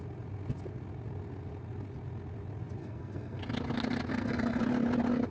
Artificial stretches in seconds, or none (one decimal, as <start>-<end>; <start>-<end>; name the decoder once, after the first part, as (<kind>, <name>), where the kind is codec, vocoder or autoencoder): 2.8-3.4 (codec, SNAC); 4.1-4.6